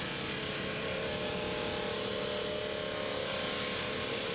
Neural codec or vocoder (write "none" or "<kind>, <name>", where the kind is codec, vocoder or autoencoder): none